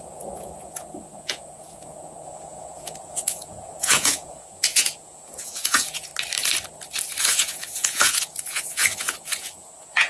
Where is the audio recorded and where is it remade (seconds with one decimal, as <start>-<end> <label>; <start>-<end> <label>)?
0.0-6.1 remade; 6.1-7.2 recorded; 7.2-10.1 remade

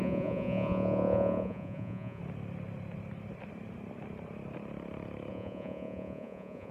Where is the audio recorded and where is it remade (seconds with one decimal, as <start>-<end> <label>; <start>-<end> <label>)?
0.0-2.2 remade; 2.2-5.3 recorded; 5.3-6.7 remade

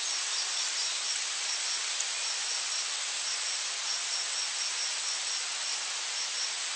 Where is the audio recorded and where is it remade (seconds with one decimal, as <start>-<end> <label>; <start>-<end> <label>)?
0.0-6.8 recorded

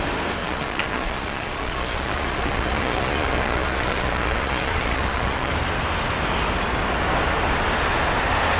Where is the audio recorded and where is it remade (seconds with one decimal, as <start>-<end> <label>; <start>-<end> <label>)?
0.0-0.4 recorded; 0.4-5.5 remade; 5.5-8.6 recorded

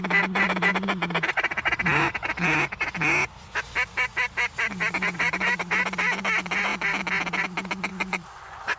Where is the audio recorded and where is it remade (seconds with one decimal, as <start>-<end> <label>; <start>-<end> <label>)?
0.0-7.9 recorded; 7.9-8.8 remade

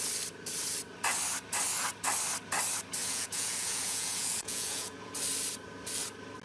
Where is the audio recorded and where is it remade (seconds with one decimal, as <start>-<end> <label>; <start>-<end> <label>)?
0.0-3.0 recorded; 3.0-5.1 remade; 5.1-6.4 recorded